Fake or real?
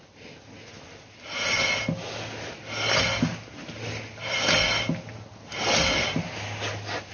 real